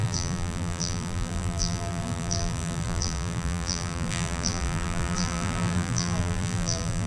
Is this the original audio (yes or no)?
no